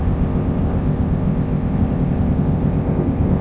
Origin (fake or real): fake